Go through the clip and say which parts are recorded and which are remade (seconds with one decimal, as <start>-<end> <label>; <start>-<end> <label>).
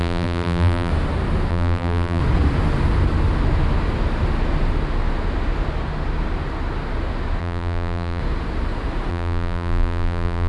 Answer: 0.0-0.9 remade; 0.9-1.5 recorded; 1.5-2.2 remade; 2.2-7.4 recorded; 7.4-8.2 remade; 8.2-9.1 recorded; 9.1-10.5 remade